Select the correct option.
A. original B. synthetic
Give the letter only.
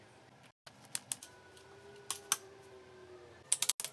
A